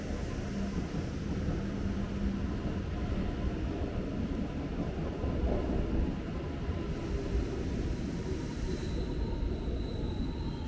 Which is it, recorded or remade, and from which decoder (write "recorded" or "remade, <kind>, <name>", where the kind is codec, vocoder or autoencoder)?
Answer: recorded